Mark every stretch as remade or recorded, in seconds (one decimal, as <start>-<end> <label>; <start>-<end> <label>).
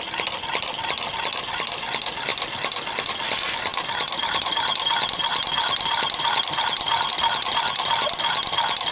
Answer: 0.0-8.9 recorded